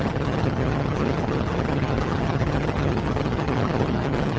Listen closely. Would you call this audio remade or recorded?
remade